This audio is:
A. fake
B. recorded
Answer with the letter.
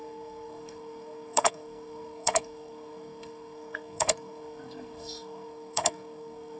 A